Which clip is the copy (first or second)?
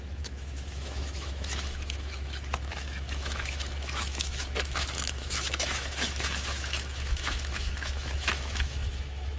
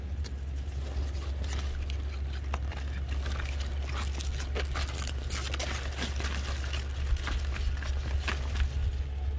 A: first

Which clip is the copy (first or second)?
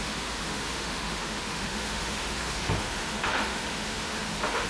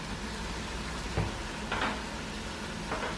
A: first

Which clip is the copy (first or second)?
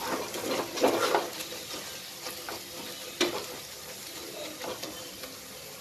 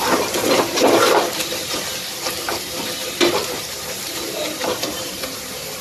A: second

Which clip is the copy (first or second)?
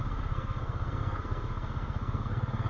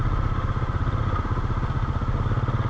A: first